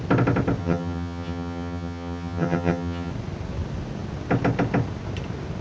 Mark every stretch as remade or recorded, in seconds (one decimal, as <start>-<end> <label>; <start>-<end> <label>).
0.0-0.6 recorded; 0.6-3.1 remade; 3.1-5.6 recorded